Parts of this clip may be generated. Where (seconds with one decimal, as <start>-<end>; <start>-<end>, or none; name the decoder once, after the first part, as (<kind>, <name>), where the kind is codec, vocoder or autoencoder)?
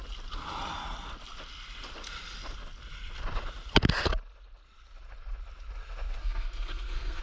6.2-7.2 (codec, SNAC)